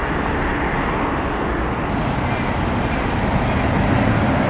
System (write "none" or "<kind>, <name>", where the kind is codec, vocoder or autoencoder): none